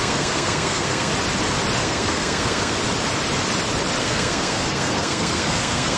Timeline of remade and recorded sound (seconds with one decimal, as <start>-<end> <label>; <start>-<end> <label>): 0.0-1.1 remade; 1.1-1.8 recorded; 1.8-2.8 remade; 2.8-4.0 recorded; 4.0-6.0 remade